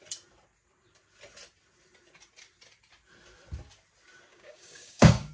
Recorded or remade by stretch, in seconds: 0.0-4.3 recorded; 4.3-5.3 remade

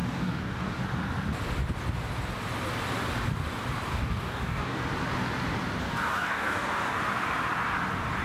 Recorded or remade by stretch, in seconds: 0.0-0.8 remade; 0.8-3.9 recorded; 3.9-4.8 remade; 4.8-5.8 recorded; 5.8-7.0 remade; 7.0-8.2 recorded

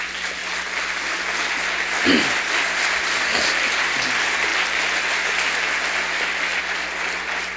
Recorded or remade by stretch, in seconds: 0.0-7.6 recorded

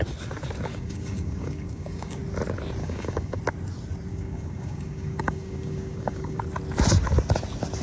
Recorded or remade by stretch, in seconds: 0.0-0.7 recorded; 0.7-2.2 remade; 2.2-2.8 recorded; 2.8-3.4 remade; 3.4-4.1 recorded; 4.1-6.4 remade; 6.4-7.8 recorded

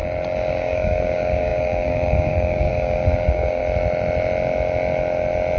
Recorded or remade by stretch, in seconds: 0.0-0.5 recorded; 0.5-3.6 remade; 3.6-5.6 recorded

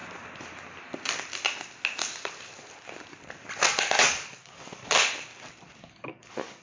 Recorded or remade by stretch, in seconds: 0.0-4.0 recorded; 4.0-4.8 remade; 4.8-5.8 recorded; 5.8-6.6 remade